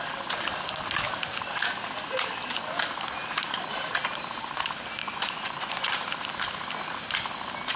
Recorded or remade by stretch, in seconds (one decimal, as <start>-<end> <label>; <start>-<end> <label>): 0.0-5.0 recorded; 5.0-5.9 remade; 5.9-7.8 recorded